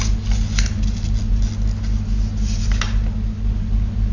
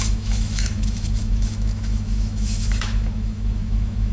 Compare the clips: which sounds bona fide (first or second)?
first